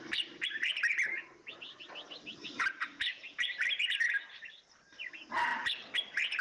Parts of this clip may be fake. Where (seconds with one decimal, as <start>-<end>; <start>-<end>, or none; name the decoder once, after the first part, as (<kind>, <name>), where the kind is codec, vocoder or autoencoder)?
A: none